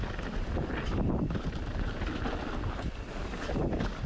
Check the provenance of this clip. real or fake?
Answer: real